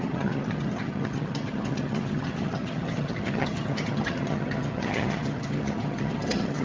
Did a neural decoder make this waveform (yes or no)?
yes